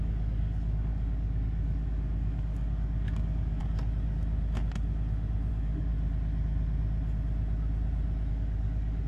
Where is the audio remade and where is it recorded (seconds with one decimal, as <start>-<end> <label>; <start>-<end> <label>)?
0.0-3.6 remade; 3.6-5.5 recorded; 5.5-5.9 remade; 5.9-8.3 recorded; 8.3-9.1 remade